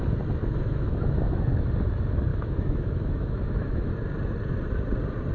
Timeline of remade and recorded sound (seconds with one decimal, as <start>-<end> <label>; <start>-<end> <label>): 0.0-0.4 recorded; 0.4-1.5 remade; 1.5-2.3 recorded; 2.3-3.9 remade; 3.9-5.3 recorded